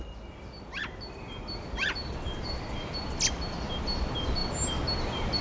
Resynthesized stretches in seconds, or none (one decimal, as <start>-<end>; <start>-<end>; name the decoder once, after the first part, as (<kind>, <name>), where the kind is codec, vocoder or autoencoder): none